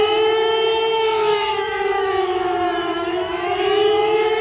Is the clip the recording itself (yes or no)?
no